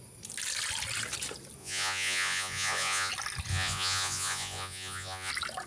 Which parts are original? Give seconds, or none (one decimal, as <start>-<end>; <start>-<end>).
0.0-1.6; 3.1-3.5; 5.3-5.7